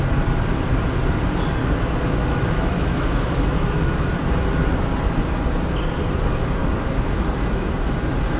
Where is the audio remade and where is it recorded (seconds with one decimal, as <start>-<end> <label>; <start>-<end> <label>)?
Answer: 0.0-1.6 recorded; 1.6-3.8 remade; 3.8-8.4 recorded